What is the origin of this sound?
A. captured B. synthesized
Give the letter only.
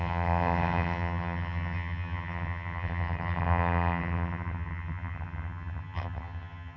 B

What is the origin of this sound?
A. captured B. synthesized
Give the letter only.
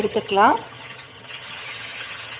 B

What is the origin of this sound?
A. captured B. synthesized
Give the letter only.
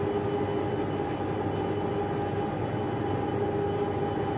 A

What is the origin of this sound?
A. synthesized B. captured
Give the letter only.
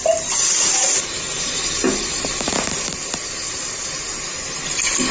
B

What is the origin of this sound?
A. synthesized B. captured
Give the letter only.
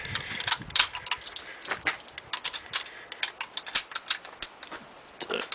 B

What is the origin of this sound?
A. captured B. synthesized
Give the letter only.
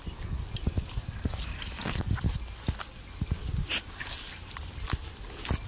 A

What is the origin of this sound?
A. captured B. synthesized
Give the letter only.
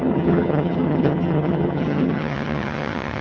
B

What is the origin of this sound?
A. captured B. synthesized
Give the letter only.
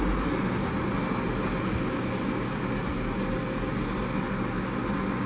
A